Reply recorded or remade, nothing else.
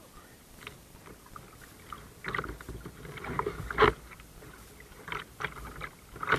recorded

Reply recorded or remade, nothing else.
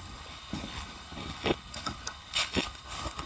remade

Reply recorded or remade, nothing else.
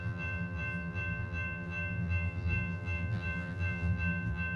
remade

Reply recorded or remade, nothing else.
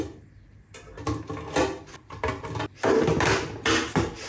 recorded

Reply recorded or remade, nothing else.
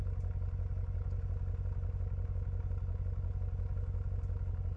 recorded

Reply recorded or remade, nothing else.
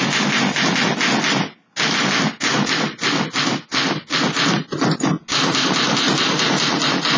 recorded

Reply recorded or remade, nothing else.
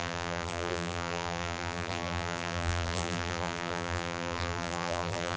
remade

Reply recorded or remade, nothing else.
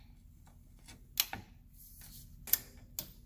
recorded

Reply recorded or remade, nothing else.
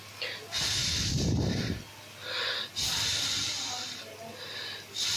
recorded